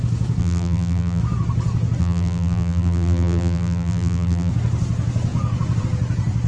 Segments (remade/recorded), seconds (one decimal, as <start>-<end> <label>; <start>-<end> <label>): 0.0-0.4 recorded; 0.4-1.2 remade; 1.2-2.0 recorded; 2.0-4.5 remade; 4.5-6.5 recorded